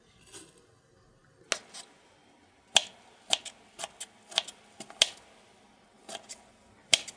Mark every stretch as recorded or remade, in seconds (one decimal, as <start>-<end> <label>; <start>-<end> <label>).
0.0-7.2 recorded